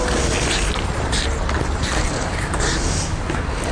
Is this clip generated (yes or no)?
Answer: no